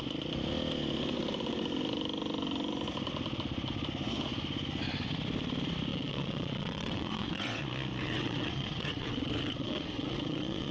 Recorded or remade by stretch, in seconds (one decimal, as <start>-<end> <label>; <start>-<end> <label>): 0.0-5.9 recorded; 5.9-7.6 remade; 7.6-8.0 recorded; 8.0-10.7 remade